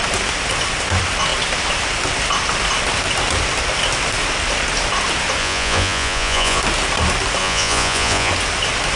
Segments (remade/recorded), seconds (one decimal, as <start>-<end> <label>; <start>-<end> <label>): 0.0-5.4 recorded; 5.4-6.6 remade; 6.6-7.4 recorded; 7.4-8.3 remade; 8.3-9.0 recorded